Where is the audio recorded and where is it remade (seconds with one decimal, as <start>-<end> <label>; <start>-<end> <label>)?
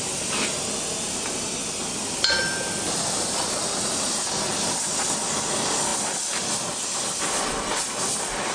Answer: 0.0-8.5 recorded